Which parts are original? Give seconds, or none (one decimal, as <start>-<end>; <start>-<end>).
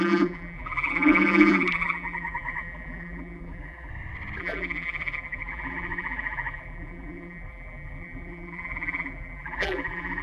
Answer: 3.9-4.4